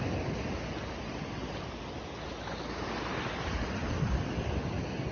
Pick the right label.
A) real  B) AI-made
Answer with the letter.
A